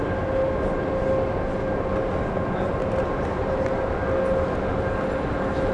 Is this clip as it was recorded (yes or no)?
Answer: yes